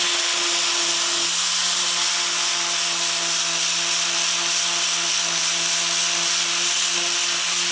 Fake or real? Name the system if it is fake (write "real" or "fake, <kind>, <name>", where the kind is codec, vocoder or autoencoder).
real